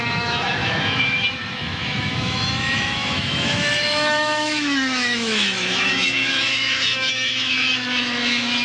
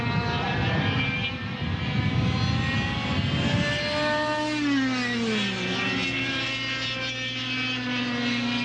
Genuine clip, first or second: second